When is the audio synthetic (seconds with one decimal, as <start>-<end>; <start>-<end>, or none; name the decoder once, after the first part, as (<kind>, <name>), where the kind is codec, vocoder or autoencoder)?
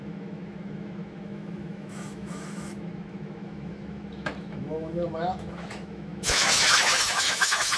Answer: 0.0-7.8 (autoencoder, DAC-VAE)